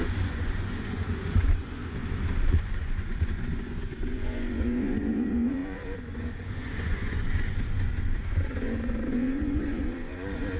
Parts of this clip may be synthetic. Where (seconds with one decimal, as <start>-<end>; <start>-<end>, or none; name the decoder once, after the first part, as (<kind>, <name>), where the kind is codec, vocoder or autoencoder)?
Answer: 0.0-1.8 (vocoder, Vocos); 2.4-10.6